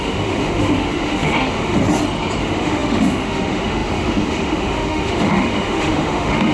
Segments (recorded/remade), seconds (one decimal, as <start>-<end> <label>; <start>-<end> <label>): 0.0-1.8 remade; 1.8-2.4 recorded; 2.4-6.5 remade